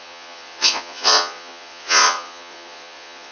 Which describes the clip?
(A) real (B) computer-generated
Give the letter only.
B